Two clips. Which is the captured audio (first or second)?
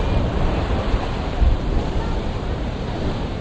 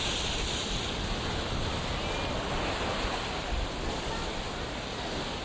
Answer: second